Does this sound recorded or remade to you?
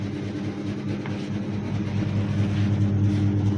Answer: recorded